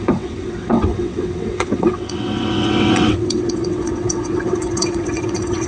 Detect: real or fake fake